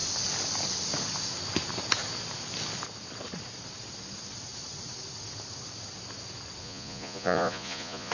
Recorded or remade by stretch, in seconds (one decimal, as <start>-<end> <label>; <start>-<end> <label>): 0.0-6.6 recorded; 6.6-8.1 remade

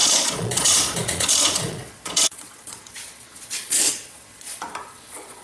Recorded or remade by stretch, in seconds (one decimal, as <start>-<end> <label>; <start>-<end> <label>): 0.0-5.4 remade

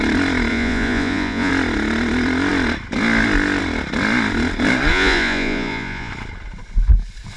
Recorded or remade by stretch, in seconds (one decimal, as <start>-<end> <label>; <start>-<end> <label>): 0.0-0.5 recorded; 0.5-1.5 remade; 1.5-4.9 recorded; 4.9-6.1 remade; 6.1-7.4 recorded

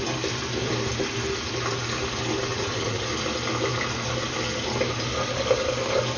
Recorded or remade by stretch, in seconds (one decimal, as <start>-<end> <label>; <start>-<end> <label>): 0.0-2.5 recorded; 2.5-3.1 remade; 3.1-6.2 recorded

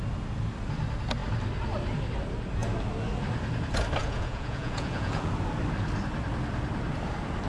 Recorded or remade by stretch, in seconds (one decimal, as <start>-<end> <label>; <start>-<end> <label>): 0.0-4.0 recorded; 4.0-5.3 remade; 5.3-7.5 recorded

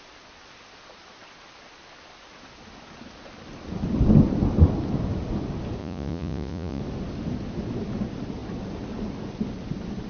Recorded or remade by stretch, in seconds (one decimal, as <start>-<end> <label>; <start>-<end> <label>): 0.0-5.8 recorded; 5.8-6.8 remade; 6.8-10.1 recorded

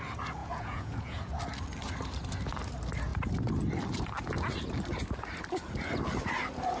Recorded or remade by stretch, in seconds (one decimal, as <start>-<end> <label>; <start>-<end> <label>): 0.0-0.4 recorded; 0.4-1.4 remade; 1.4-6.8 recorded